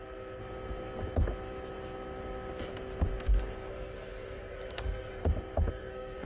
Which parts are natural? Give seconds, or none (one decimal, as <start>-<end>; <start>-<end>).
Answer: 0.4-3.7; 5.2-5.7